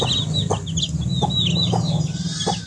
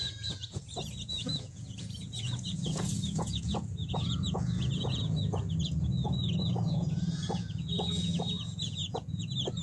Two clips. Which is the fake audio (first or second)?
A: second